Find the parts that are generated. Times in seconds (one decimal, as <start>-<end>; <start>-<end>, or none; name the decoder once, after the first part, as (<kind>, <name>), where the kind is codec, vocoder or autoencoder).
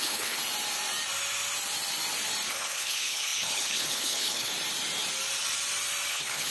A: 0.0-0.4 (codec, HILCodec); 2.5-4.5; 6.1-6.5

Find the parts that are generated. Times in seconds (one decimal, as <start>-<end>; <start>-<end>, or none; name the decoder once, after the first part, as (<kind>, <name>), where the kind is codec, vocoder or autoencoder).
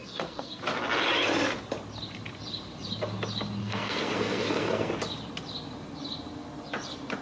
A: 0.0-0.6 (codec, SNAC); 3.6-4.9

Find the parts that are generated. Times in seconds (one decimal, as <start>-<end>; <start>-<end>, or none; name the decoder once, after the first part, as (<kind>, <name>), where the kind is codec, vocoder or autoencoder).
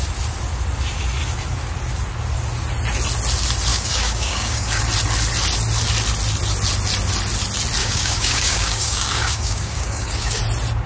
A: 3.7-4.8 (codec, DAC); 7.8-10.4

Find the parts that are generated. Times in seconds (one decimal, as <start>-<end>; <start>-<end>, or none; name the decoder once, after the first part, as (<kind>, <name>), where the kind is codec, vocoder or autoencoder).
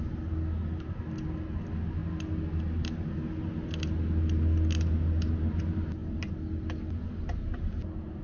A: none